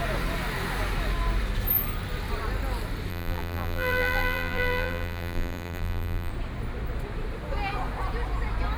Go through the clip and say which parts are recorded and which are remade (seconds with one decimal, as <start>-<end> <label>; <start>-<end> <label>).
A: 0.0-3.1 recorded; 3.1-6.3 remade; 6.3-8.8 recorded